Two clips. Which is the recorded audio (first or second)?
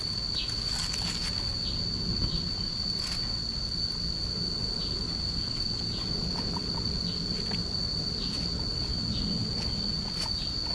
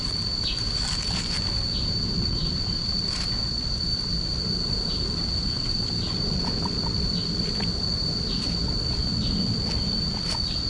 first